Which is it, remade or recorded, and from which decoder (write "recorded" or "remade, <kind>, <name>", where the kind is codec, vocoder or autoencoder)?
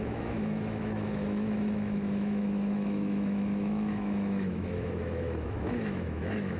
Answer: remade, autoencoder, DAC-VAE